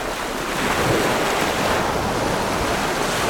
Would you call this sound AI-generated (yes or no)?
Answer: no